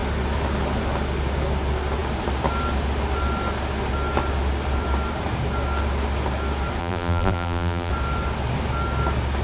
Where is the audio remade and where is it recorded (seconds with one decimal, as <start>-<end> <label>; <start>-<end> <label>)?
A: 0.0-6.8 recorded; 6.8-7.9 remade; 7.9-9.4 recorded

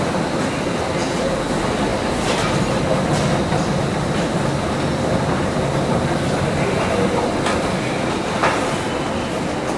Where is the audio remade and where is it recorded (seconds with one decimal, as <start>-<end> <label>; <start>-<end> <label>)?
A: 0.0-1.0 recorded; 1.0-1.5 remade; 1.5-9.8 recorded

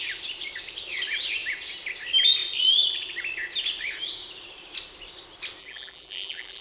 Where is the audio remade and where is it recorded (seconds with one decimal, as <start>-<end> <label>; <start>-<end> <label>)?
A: 0.0-5.6 recorded; 5.6-6.6 remade

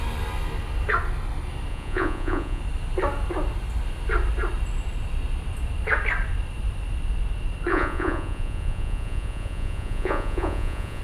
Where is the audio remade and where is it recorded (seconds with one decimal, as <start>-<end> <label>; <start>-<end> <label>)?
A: 0.0-1.7 recorded; 1.7-2.6 remade; 2.6-7.7 recorded; 7.7-11.0 remade

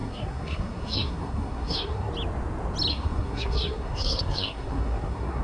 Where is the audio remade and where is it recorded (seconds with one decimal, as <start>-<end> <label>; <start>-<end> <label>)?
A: 0.0-2.1 remade; 2.1-2.9 recorded; 2.9-5.4 remade

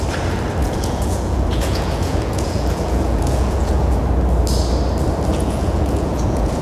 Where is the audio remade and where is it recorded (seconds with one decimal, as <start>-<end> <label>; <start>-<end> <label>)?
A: 0.0-0.6 recorded; 0.6-4.0 remade; 4.0-5.3 recorded; 5.3-6.6 remade